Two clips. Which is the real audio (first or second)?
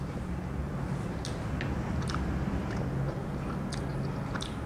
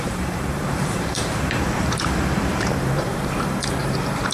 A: first